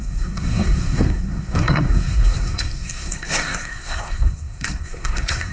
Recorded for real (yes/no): no